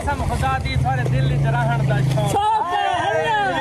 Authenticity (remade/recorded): recorded